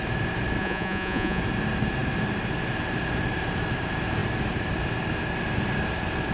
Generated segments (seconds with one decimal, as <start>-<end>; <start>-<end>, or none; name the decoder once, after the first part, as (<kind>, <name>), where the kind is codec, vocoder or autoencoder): 0.6-1.4 (vocoder, Vocos)